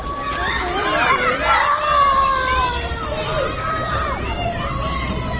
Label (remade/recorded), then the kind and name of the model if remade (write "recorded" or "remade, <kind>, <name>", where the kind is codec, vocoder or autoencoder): recorded